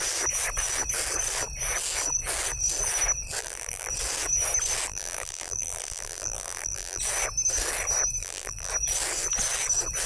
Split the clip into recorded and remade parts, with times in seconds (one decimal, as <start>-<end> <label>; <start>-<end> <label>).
0.0-3.4 recorded; 3.4-3.9 remade; 3.9-4.9 recorded; 4.9-7.0 remade; 7.0-8.2 recorded; 8.2-8.7 remade; 8.7-10.1 recorded